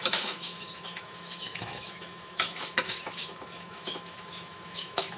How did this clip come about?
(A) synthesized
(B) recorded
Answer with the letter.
A